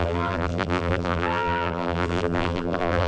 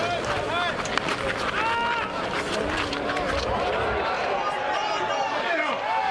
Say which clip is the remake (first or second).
first